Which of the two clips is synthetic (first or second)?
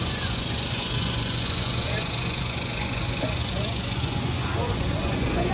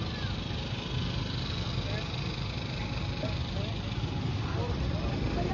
first